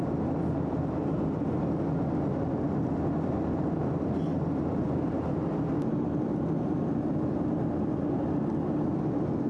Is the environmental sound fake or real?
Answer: real